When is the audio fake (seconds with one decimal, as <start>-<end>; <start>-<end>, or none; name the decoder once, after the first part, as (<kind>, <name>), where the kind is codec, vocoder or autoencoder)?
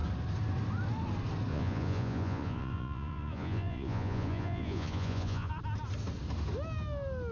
1.5-5.5 (vocoder, Vocos)